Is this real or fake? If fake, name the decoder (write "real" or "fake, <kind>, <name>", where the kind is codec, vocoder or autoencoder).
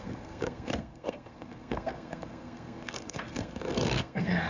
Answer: fake, codec, SNAC